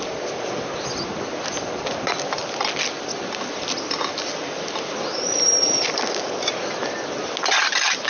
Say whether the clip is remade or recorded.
recorded